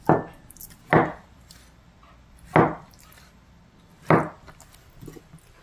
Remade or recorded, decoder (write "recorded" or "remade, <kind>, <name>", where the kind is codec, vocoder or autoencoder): recorded